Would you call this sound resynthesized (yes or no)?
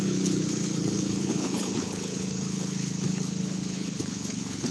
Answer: yes